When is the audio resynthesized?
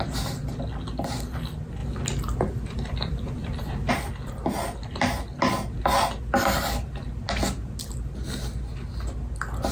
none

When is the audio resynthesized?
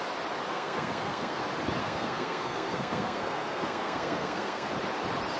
0.5-1.4 (codec, SNAC); 1.8-4.7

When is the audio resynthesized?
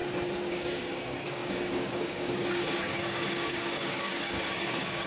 0.5-5.1 (codec, DAC)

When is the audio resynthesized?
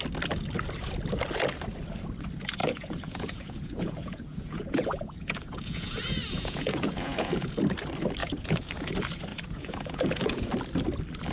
2.6-7.6 (vocoder, Vocos); 8.2-8.9; 9.3-10.5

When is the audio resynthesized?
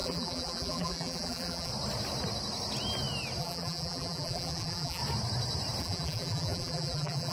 0.0-1.7 (vocoder, BigVGAN v2); 3.4-5.0; 5.8-7.3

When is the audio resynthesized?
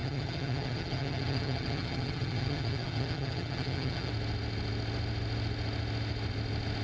0.0-4.1 (vocoder, HiFi-GAN)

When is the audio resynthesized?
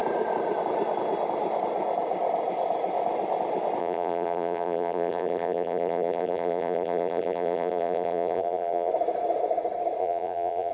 3.8-8.9 (vocoder, BigVGAN v2); 10.0-10.7